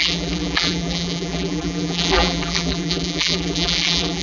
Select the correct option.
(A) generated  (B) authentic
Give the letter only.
A